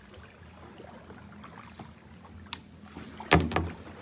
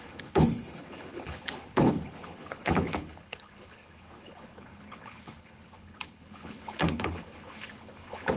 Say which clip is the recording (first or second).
first